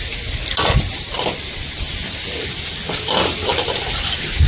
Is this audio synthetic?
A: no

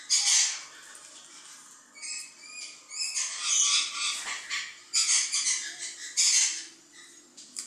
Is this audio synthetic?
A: no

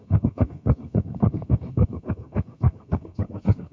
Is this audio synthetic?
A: yes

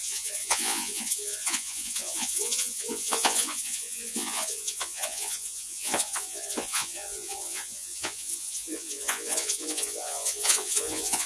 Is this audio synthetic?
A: yes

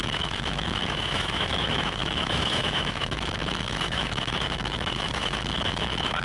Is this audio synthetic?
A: yes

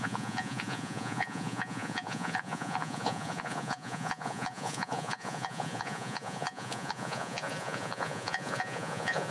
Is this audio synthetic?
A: yes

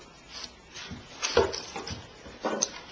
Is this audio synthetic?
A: no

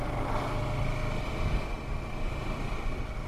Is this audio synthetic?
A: no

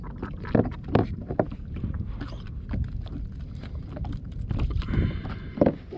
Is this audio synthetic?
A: no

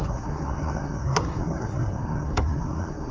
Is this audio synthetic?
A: yes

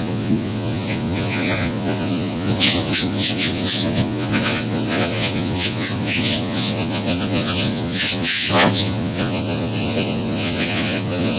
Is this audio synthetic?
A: yes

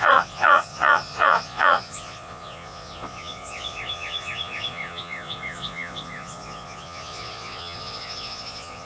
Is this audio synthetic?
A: yes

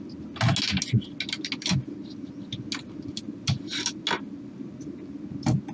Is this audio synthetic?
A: no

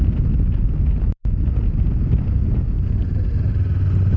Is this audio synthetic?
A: no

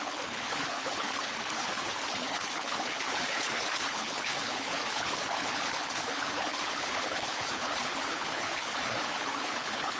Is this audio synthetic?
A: yes